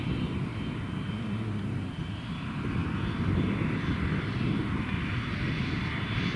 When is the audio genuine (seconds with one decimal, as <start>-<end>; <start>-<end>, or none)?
0.0-6.4